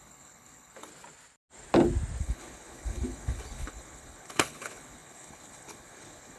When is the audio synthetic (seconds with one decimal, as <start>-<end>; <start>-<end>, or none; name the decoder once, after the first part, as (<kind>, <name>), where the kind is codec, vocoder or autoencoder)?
0.0-0.9 (codec, HILCodec); 2.2-6.4